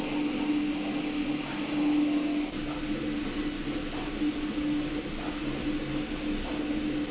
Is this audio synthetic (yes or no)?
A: no